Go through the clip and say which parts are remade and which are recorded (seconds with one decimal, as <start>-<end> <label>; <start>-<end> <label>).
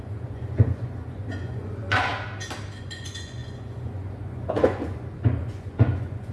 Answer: 0.0-2.1 remade; 2.1-2.8 recorded; 2.8-6.3 remade